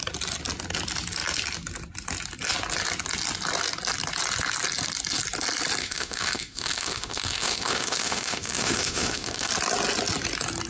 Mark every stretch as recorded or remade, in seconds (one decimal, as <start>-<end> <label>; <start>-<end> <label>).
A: 0.0-5.8 recorded; 5.8-9.5 remade; 9.5-10.7 recorded